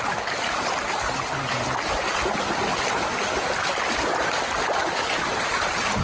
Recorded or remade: recorded